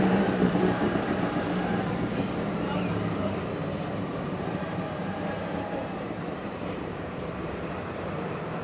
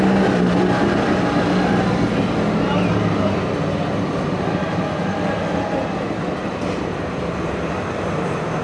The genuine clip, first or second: second